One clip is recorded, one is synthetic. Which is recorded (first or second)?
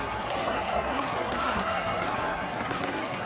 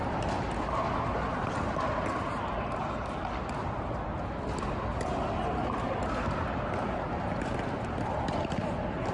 second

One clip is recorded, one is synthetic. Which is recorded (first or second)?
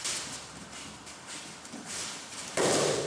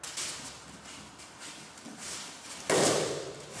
second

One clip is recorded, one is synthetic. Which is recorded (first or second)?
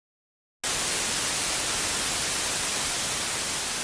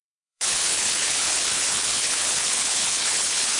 first